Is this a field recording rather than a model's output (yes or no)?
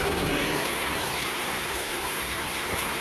no